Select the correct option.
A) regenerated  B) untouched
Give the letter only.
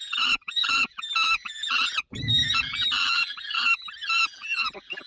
A